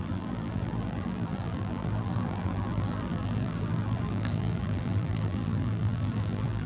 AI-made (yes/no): yes